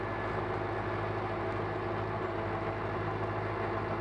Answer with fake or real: real